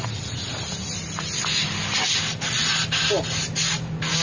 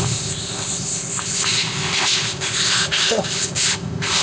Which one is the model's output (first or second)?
second